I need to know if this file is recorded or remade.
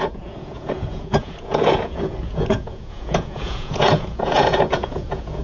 remade